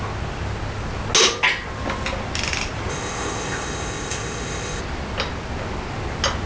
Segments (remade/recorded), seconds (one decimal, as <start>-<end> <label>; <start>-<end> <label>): 0.0-2.9 recorded; 2.9-4.8 remade; 4.8-6.5 recorded